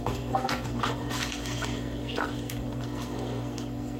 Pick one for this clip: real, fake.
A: fake